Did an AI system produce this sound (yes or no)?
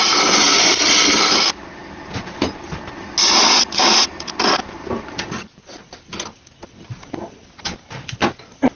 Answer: no